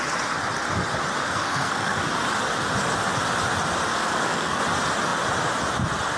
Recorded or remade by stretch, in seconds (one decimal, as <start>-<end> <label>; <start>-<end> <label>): 0.0-1.2 recorded; 1.2-2.1 remade; 2.1-3.9 recorded; 3.9-4.6 remade; 4.6-6.2 recorded